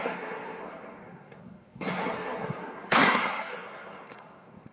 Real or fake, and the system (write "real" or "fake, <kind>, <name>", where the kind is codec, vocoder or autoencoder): fake, codec, SNAC